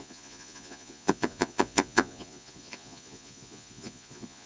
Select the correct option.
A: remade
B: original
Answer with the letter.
A